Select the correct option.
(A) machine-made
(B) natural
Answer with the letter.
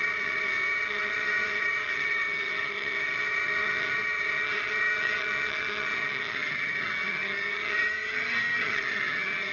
A